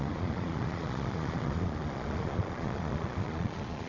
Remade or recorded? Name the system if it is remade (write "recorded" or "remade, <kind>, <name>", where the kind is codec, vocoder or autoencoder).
remade, vocoder, Vocos